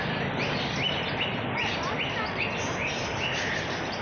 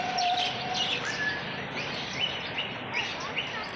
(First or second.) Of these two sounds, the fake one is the second